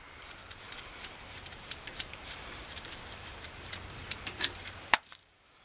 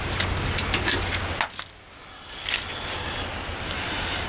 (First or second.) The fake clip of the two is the first